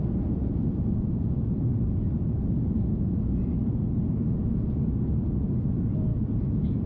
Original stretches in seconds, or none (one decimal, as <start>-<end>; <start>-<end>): none